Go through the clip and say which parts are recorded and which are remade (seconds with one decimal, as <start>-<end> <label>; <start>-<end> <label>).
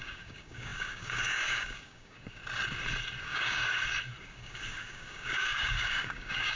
0.0-2.4 remade; 2.4-3.2 recorded; 3.2-3.6 remade; 3.6-4.2 recorded; 4.2-6.6 remade